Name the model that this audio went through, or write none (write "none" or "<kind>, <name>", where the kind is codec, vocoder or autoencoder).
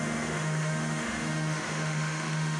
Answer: autoencoder, DAC-VAE